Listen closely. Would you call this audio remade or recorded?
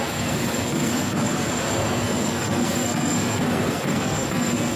remade